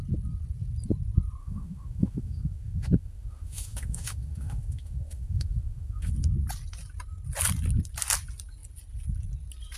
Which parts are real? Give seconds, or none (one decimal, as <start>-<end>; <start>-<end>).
0.0-1.4; 6.1-9.8